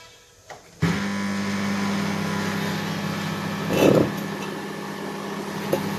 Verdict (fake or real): real